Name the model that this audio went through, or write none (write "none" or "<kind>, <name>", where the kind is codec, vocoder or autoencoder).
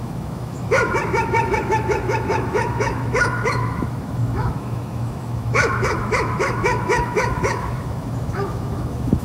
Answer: autoencoder, DAC-VAE